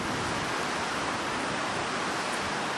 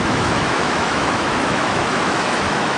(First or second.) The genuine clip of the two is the first